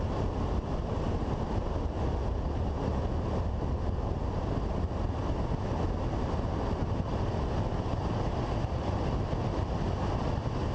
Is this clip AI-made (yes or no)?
no